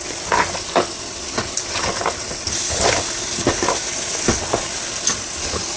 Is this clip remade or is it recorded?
recorded